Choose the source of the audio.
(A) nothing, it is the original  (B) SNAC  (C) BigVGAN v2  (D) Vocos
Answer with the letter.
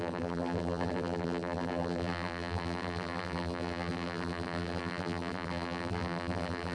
C